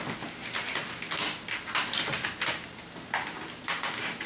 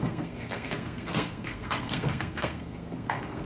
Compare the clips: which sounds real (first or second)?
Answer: first